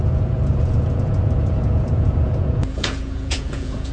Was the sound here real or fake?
fake